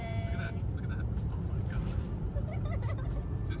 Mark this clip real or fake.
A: fake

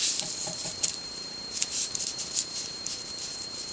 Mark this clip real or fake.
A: fake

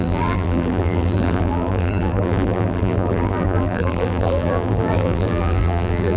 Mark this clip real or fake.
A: fake